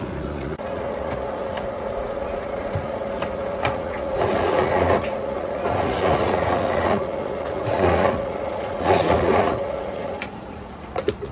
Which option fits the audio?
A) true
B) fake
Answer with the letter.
B